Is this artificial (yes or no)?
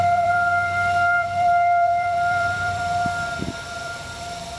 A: yes